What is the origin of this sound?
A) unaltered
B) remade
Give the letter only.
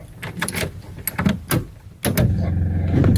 A